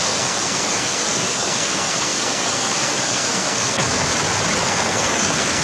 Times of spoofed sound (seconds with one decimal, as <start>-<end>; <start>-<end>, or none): 0.0-4.1; 4.6-5.6